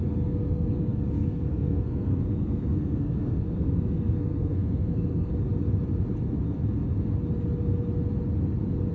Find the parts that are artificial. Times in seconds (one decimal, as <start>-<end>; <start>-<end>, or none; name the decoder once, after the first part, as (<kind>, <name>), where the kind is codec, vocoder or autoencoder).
0.0-5.3 (codec, SNAC)